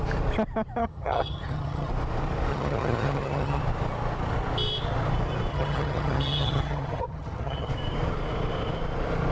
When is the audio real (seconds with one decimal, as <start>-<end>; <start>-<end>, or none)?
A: 0.0-0.8; 1.9-2.5; 3.6-5.5; 7.7-9.3